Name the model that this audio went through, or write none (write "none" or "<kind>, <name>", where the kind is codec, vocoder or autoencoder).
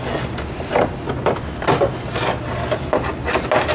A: none